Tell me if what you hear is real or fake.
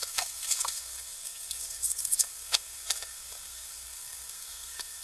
fake